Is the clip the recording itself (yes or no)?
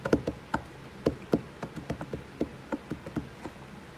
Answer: yes